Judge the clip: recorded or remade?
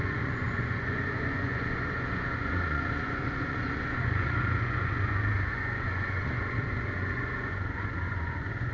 remade